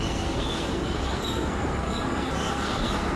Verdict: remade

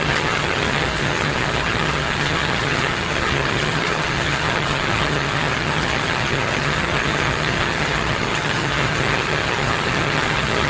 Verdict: remade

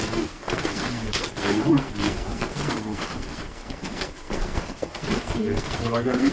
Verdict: remade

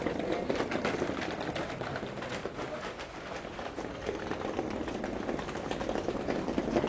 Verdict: recorded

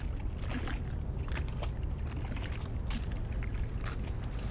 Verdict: recorded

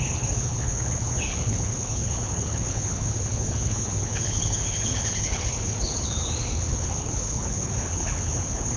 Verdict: remade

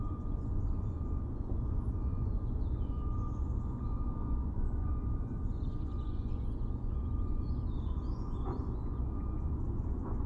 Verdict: remade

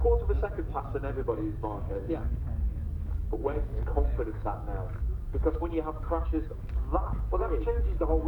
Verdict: remade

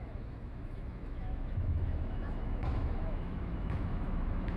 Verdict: remade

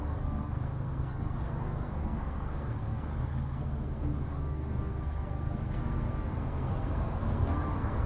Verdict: remade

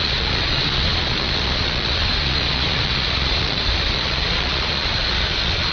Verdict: remade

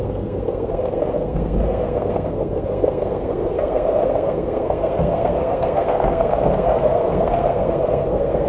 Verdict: remade